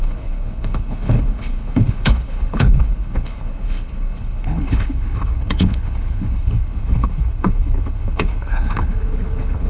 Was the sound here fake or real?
fake